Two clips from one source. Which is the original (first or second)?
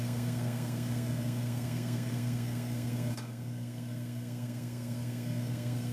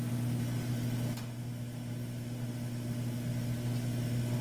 second